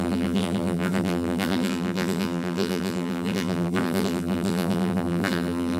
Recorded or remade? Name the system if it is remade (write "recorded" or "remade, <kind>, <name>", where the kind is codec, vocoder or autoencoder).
remade, vocoder, BigVGAN v2